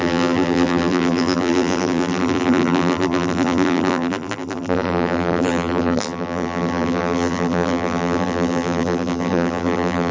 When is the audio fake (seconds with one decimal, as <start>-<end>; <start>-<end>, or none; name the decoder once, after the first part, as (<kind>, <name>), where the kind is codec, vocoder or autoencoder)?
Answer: 0.0-10.1 (vocoder, BigVGAN v2)